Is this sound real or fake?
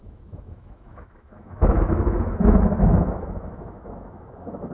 fake